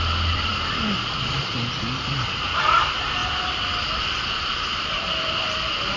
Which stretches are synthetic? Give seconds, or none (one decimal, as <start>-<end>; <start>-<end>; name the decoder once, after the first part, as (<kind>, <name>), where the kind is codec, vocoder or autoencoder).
0.0-0.5 (vocoder, BigVGAN v2); 2.8-3.2; 3.8-6.0